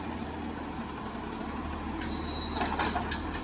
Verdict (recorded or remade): recorded